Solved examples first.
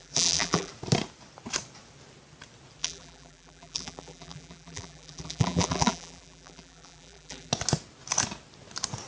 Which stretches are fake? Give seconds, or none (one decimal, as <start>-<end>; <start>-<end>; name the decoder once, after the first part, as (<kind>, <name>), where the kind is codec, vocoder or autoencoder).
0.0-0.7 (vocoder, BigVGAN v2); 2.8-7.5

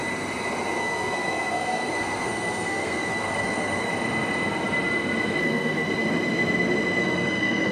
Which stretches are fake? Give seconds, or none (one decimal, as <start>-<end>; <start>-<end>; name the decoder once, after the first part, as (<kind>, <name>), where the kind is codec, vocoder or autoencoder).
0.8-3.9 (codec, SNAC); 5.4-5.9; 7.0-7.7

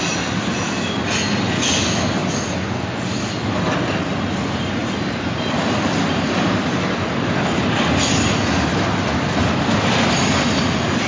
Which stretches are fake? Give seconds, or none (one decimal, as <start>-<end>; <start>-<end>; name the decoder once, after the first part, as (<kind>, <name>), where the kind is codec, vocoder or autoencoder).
none

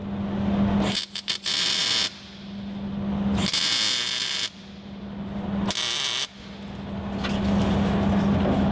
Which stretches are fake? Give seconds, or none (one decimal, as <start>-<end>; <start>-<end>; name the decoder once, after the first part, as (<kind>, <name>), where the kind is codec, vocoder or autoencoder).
none

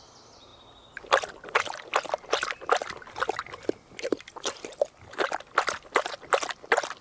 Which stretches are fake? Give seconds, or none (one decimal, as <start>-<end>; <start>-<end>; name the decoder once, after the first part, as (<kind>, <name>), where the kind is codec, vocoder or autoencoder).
none